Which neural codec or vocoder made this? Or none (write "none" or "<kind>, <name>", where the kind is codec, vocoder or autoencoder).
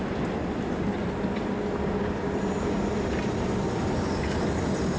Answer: none